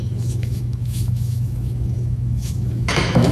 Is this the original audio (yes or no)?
no